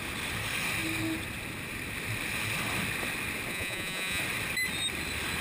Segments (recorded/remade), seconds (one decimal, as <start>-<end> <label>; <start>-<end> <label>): 0.0-3.5 recorded; 3.5-4.2 remade; 4.2-5.4 recorded